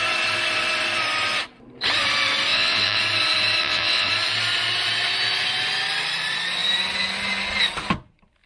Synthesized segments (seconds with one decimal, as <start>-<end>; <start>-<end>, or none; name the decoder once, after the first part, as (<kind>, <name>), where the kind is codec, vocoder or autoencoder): 2.5-3.0 (vocoder, WaveNeXt); 3.6-4.1